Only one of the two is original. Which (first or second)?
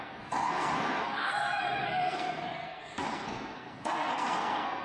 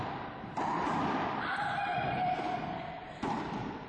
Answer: second